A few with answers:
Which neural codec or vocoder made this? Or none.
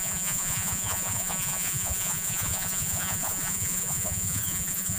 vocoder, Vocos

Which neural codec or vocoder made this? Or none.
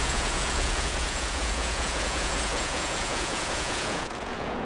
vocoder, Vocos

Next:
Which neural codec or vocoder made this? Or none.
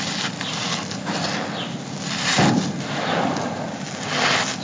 none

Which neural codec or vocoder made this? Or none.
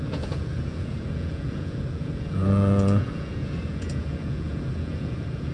vocoder, Vocos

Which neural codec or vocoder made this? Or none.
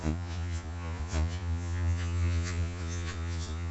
vocoder, Vocos